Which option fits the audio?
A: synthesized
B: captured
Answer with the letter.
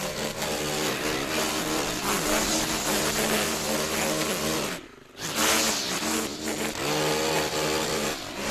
B